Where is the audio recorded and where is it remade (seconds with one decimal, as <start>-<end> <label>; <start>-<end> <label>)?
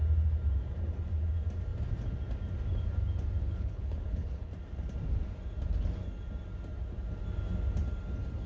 0.0-3.4 recorded; 3.4-4.5 remade; 4.5-8.5 recorded